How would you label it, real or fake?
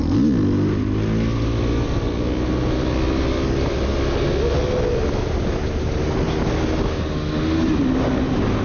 real